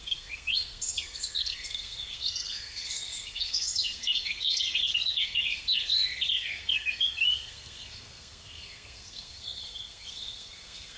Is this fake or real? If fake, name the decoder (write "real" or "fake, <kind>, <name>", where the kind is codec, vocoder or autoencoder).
fake, codec, SNAC